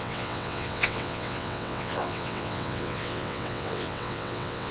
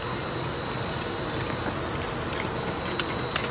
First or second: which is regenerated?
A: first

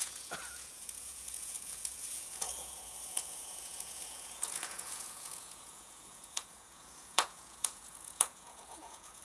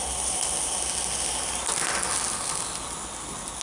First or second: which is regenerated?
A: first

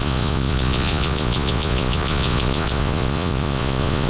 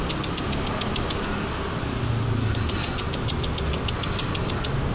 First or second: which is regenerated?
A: first